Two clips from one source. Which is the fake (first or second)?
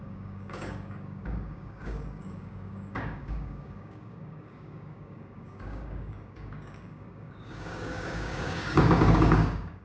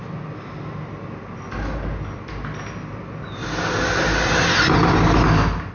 first